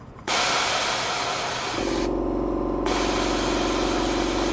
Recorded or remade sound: recorded